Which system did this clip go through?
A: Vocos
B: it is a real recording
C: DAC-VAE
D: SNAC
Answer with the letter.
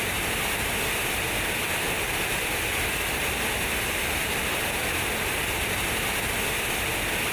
B